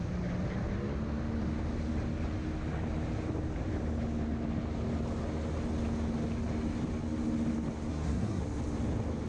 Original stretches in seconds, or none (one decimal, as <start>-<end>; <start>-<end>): 0.0-7.9; 8.4-9.3